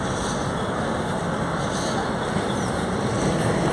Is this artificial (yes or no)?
no